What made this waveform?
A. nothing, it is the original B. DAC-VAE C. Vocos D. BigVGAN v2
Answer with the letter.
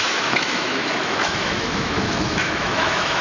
B